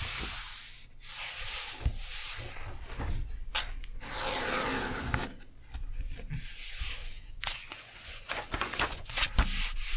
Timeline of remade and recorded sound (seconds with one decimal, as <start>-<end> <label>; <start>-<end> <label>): 0.0-7.0 recorded; 7.0-9.3 remade; 9.3-10.0 recorded